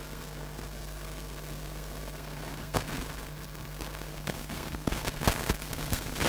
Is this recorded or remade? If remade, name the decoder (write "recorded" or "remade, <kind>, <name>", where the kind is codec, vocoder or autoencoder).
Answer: remade, codec, SNAC